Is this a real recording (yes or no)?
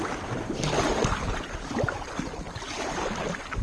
yes